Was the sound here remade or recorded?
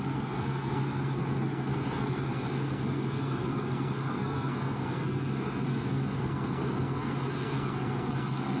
remade